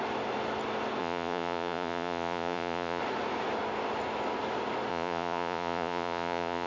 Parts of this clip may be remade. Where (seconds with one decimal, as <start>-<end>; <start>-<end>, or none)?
1.0-3.0; 4.9-6.7